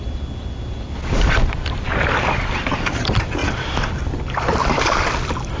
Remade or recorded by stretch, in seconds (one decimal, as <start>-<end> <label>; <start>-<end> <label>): 0.0-5.6 recorded